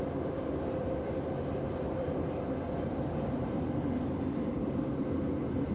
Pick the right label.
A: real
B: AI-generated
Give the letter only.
A